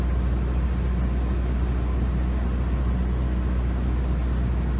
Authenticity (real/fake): real